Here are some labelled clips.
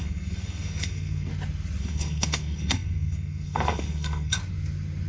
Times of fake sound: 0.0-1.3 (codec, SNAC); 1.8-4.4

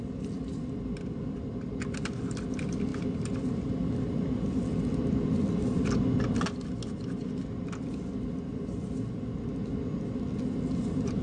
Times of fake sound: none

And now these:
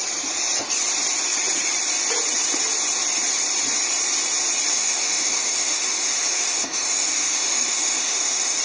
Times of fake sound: 4.7-8.6 (autoencoder, DAC-VAE)

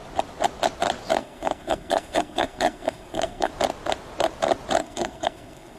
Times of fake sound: 1.2-3.5 (codec, SNAC); 4.8-5.8

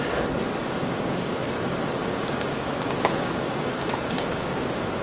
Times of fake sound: 0.8-1.4 (codec, DAC); 2.0-5.0